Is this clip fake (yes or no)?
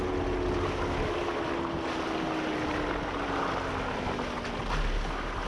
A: no